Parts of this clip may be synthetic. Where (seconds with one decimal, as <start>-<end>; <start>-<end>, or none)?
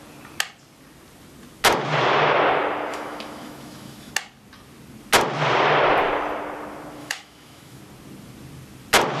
2.9-4.1; 7.0-7.8